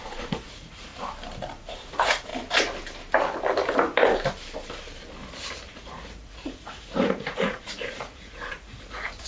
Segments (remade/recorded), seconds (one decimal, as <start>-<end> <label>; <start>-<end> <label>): 0.0-0.9 remade; 0.9-1.7 recorded; 1.7-2.3 remade; 2.3-5.7 recorded; 5.7-9.3 remade